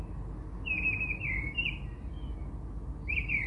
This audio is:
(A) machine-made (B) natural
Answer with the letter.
B